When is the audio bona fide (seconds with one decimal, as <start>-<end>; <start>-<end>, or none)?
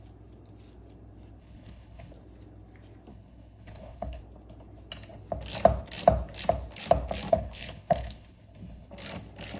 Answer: 0.0-1.4; 2.1-3.1; 4.2-7.3; 8.9-9.6